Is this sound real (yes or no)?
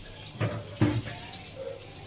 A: yes